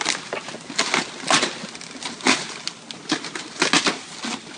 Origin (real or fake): real